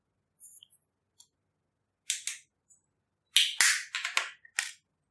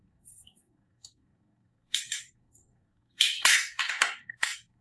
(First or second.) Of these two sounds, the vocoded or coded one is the second